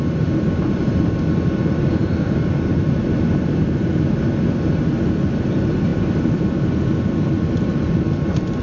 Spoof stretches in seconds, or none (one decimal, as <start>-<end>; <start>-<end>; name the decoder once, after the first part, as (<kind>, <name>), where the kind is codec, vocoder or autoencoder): 2.0-3.6 (vocoder, BigVGAN v2)